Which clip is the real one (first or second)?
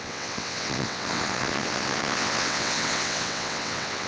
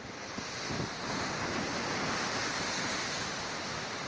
second